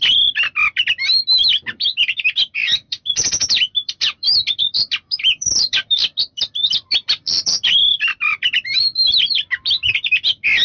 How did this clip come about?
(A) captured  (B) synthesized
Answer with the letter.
B